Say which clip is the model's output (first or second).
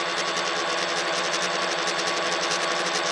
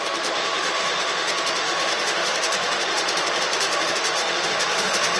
second